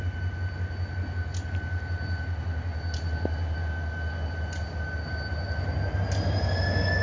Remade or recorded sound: recorded